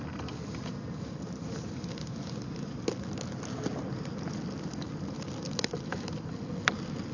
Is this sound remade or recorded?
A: recorded